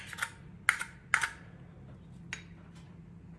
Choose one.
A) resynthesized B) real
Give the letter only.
B